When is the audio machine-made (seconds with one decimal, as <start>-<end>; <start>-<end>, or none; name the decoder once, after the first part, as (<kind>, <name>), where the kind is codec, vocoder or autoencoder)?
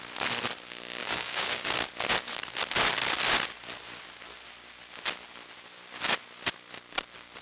1.0-1.7 (codec, DAC)